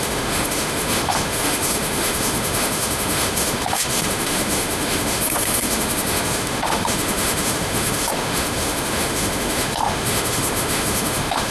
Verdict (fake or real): fake